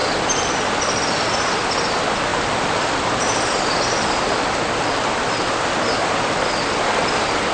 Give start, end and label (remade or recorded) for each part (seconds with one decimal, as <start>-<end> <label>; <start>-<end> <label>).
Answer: 0.0-7.5 recorded